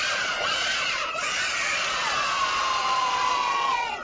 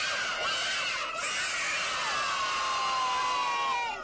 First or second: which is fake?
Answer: first